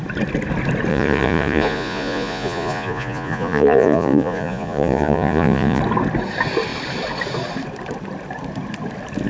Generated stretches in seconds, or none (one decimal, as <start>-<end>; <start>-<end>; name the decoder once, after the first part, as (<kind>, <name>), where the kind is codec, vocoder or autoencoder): 0.9-5.8 (vocoder, Vocos)